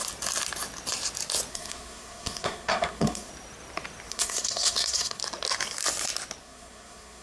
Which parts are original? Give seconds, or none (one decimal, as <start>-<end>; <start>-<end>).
0.0-1.5; 3.3-4.1; 5.2-6.4